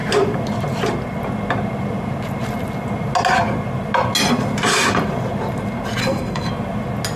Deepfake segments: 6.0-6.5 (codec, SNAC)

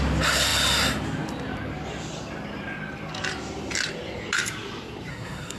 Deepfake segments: 5.1-5.6 (codec, SNAC)